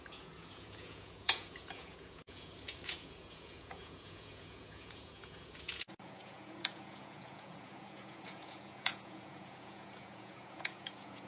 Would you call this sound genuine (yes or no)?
no